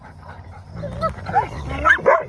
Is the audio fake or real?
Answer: real